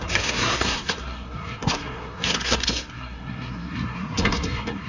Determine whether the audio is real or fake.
fake